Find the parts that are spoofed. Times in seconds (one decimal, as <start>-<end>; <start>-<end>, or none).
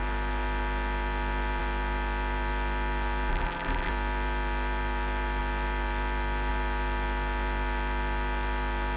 3.3-3.9